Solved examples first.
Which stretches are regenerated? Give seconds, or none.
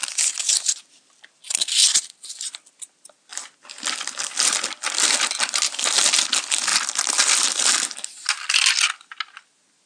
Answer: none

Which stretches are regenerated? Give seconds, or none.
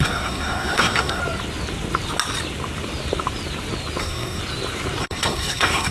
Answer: 0.0-1.2 (codec, SNAC); 4.0-4.4; 5.0-5.9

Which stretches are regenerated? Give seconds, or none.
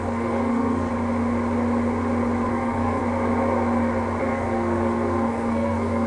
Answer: 0.0-0.9 (codec, SNAC); 2.5-3.0; 4.2-6.1